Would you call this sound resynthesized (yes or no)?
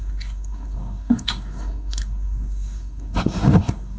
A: yes